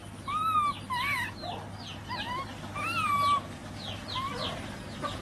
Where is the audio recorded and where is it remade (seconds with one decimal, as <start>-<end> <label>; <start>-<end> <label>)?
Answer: 0.0-5.2 recorded